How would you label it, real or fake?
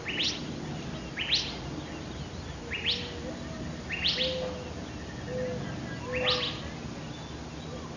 real